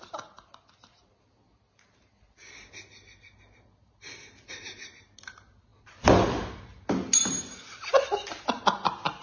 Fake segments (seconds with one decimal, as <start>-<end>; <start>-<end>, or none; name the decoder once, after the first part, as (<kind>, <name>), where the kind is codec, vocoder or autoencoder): none